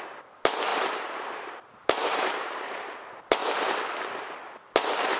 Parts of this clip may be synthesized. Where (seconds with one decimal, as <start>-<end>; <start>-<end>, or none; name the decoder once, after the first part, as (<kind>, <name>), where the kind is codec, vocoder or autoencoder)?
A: 2.0-3.0 (vocoder, BigVGAN v2)